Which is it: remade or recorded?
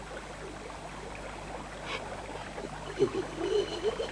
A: remade